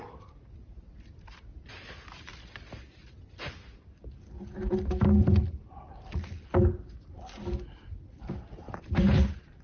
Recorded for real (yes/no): yes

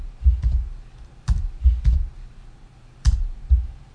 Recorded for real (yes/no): yes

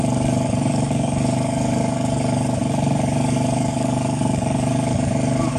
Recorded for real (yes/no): no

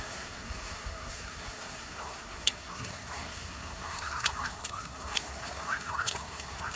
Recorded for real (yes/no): no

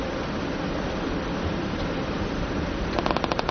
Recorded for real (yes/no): yes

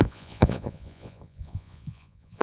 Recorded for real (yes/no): no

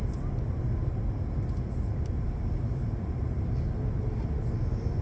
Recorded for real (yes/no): yes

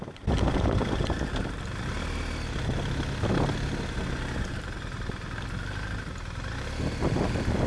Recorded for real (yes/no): yes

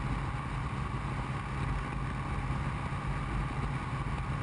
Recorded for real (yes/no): yes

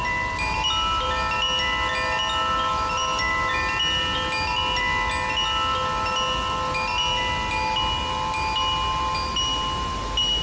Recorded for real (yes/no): yes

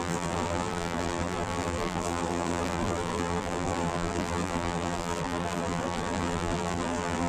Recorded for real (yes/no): no